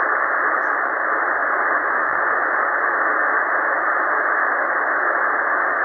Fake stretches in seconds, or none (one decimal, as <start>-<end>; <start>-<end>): 1.4-2.8